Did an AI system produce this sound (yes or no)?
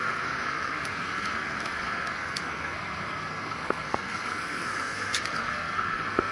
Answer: yes